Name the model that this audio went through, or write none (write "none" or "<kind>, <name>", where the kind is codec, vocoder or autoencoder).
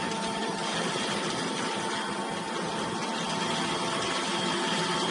none